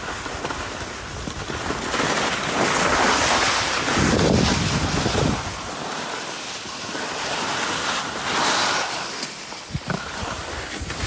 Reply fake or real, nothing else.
real